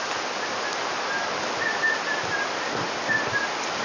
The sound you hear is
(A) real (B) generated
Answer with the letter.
A